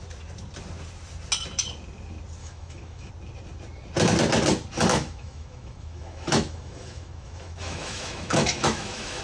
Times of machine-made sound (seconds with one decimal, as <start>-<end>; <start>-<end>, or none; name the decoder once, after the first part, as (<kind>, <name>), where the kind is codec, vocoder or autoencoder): 2.4-3.1 (autoencoder, DAC-VAE); 4.9-9.2